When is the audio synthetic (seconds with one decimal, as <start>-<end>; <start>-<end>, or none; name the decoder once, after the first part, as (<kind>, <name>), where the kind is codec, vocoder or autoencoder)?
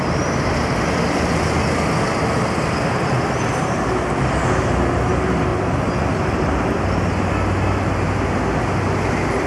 5.5-7.3 (vocoder, BigVGAN v2)